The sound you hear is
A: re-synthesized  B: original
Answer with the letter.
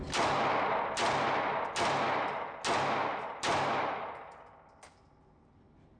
B